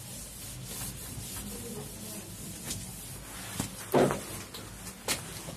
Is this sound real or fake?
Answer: real